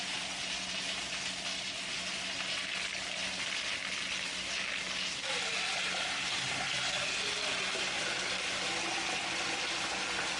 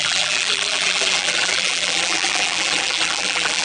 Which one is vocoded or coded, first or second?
second